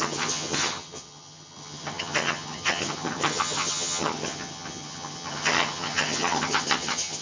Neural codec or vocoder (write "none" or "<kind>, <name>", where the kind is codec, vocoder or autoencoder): vocoder, HiFi-GAN